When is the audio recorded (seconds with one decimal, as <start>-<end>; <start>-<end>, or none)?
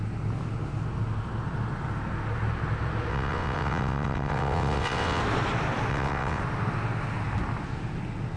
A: 0.0-3.1; 5.2-5.9; 6.4-8.4